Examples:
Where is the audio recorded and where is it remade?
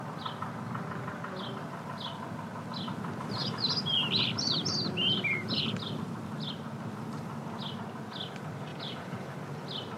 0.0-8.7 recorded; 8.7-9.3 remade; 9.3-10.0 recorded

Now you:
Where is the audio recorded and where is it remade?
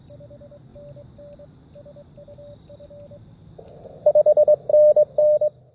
0.0-5.7 recorded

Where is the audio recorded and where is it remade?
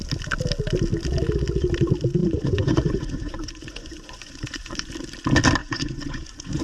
0.0-2.2 recorded; 2.2-4.9 remade; 4.9-5.6 recorded; 5.6-6.6 remade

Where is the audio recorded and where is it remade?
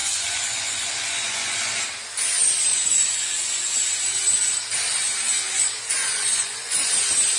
0.0-1.8 remade; 1.8-2.7 recorded; 2.7-3.6 remade; 3.6-5.5 recorded; 5.5-6.9 remade; 6.9-7.4 recorded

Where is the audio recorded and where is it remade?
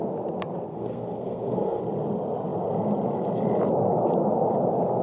0.0-0.7 recorded; 0.7-1.8 remade; 1.8-5.0 recorded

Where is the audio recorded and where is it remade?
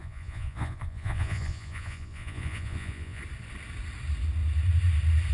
0.0-3.2 remade; 3.2-5.3 recorded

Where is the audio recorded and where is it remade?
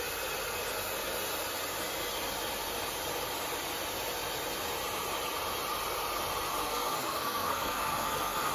0.0-6.6 recorded; 6.6-8.5 remade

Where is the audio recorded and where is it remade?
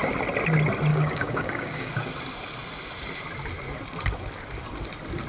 0.0-0.9 recorded; 0.9-1.9 remade; 1.9-5.3 recorded